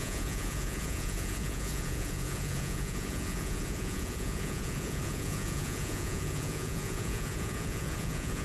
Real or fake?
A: fake